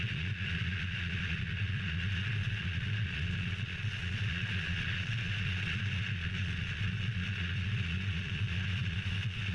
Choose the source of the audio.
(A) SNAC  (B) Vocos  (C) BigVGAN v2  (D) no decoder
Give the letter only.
B